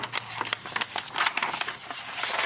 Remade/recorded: recorded